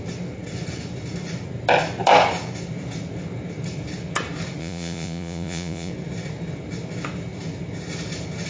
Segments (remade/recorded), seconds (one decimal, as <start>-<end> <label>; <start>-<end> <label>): 0.0-4.6 recorded; 4.6-5.9 remade; 5.9-8.5 recorded